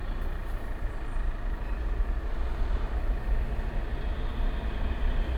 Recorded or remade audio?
recorded